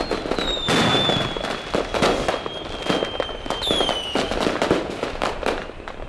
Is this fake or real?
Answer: real